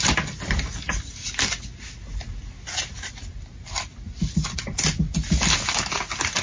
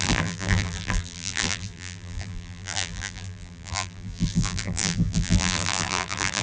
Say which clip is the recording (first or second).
first